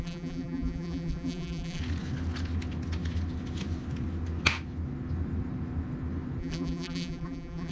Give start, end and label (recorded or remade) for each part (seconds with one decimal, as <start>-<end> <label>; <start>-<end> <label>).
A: 0.0-1.8 remade; 1.8-6.4 recorded; 6.4-7.7 remade